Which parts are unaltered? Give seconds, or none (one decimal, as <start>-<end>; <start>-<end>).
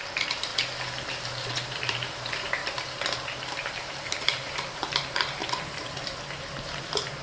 0.5-1.1; 2.6-3.6; 5.4-6.4